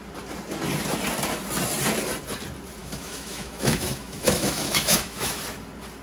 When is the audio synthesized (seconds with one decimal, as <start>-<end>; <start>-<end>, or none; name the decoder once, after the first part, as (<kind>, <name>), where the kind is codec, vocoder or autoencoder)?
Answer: 2.8-5.4 (autoencoder, DAC-VAE)